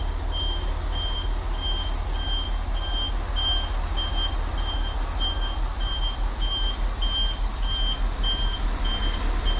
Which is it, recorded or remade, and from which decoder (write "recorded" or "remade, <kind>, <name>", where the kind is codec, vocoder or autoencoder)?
recorded